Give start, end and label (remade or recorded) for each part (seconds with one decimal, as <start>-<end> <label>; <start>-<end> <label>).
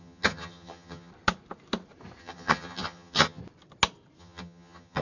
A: 0.0-1.1 remade; 1.1-2.2 recorded; 2.2-3.4 remade; 3.4-4.2 recorded; 4.2-5.0 remade